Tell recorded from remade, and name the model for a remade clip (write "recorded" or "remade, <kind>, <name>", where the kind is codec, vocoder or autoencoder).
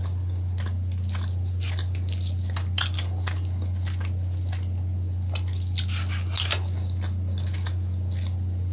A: recorded